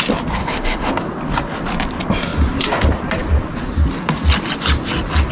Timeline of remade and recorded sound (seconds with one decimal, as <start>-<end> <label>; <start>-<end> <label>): 0.0-0.4 recorded; 0.4-0.9 remade; 0.9-5.3 recorded